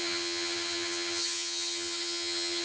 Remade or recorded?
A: remade